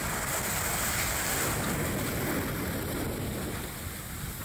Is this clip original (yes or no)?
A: yes